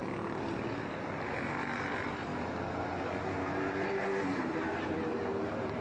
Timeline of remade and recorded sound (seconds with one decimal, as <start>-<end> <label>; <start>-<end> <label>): 0.0-1.3 recorded; 1.3-2.3 remade; 2.3-3.2 recorded; 3.2-5.8 remade